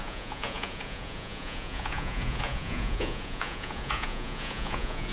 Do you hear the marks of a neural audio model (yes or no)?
yes